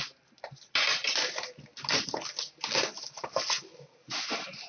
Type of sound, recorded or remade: recorded